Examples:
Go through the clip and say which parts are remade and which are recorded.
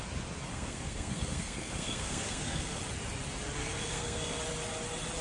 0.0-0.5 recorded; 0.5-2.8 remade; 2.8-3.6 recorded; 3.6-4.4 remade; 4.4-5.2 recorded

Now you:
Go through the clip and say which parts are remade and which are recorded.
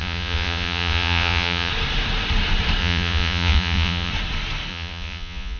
0.0-1.7 remade; 1.7-2.8 recorded; 2.8-4.1 remade; 4.1-4.7 recorded; 4.7-5.6 remade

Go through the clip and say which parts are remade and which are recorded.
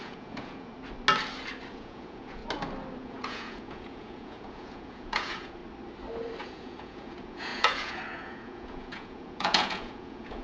0.0-0.7 remade; 0.7-1.7 recorded; 1.7-2.4 remade; 2.4-3.0 recorded; 3.0-5.6 remade; 5.6-6.4 recorded; 6.4-10.4 remade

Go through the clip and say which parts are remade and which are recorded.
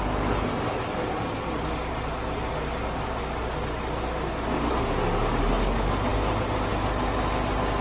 0.0-7.8 recorded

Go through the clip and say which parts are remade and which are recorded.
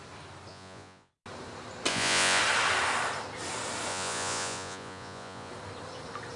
0.0-0.5 recorded; 0.5-1.1 remade; 1.1-1.9 recorded; 1.9-2.4 remade; 2.4-3.9 recorded; 3.9-5.5 remade; 5.5-6.4 recorded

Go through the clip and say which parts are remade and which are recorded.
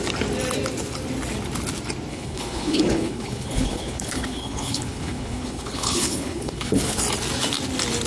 0.0-2.1 recorded; 2.1-7.0 remade; 7.0-8.1 recorded